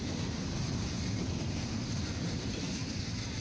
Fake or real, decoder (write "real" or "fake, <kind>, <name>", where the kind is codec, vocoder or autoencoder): real